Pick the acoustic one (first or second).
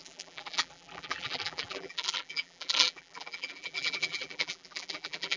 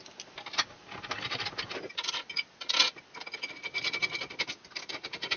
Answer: second